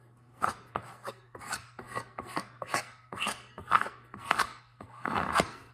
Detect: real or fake fake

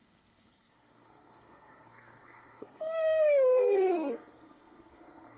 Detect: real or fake fake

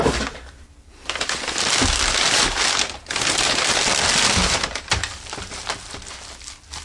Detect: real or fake real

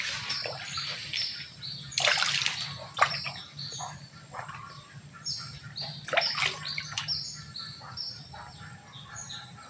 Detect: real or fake real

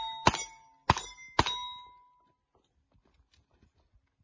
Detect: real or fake real